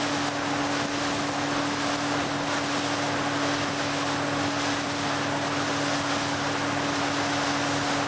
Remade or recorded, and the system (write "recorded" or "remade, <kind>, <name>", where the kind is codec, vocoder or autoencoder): recorded